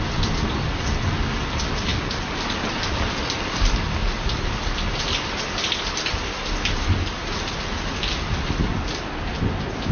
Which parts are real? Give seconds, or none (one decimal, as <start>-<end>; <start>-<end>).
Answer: 0.0-9.9